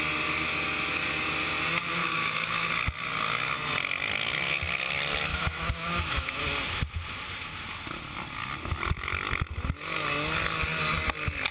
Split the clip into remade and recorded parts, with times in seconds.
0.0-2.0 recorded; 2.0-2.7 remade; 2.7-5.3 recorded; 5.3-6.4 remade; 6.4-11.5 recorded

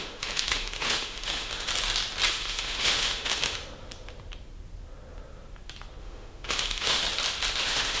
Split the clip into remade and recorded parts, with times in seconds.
0.0-1.7 remade; 1.7-2.3 recorded; 2.3-3.6 remade; 3.6-6.0 recorded; 6.0-7.0 remade; 7.0-7.6 recorded; 7.6-8.0 remade

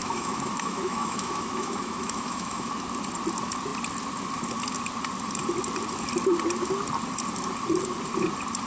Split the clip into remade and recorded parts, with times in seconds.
0.0-2.7 remade; 2.7-8.7 recorded

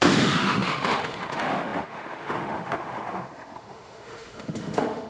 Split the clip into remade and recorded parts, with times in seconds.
0.0-5.1 remade

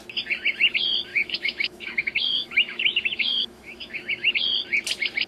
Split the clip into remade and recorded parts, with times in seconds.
0.0-1.1 recorded; 1.1-4.3 remade; 4.3-5.3 recorded

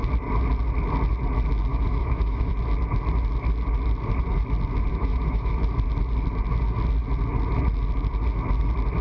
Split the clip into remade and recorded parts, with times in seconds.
0.0-1.7 recorded; 1.7-2.5 remade; 2.5-4.9 recorded; 4.9-5.5 remade; 5.5-9.0 recorded

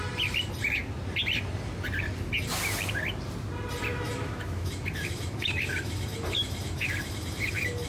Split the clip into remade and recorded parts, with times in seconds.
0.0-3.9 recorded; 3.9-7.9 remade

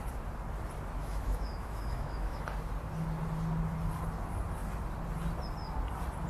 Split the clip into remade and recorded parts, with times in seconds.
0.0-1.0 recorded; 1.0-2.4 remade; 2.4-6.3 recorded